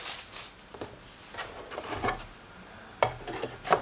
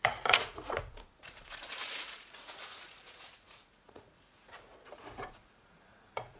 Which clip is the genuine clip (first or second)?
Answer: first